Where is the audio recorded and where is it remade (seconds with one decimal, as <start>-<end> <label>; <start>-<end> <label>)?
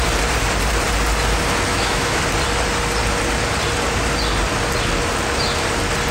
0.0-1.7 recorded; 1.7-2.2 remade; 2.2-6.1 recorded